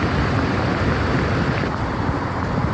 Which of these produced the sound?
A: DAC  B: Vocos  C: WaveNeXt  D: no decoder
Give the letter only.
D